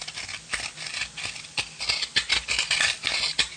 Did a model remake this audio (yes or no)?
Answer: no